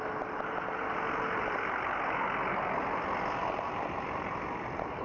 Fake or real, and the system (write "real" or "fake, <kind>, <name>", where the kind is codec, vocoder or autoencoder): real